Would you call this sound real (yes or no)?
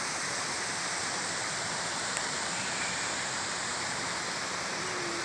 yes